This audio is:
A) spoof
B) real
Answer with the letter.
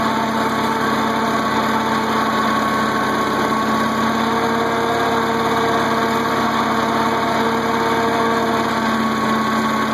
B